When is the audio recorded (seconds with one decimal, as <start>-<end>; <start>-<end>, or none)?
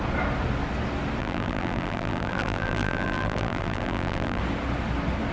0.0-1.2; 4.4-5.3